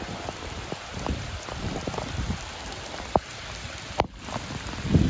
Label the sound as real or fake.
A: fake